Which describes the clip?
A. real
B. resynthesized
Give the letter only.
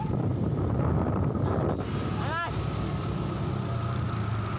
A